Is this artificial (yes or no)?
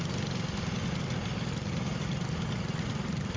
no